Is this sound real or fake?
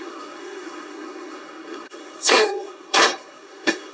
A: fake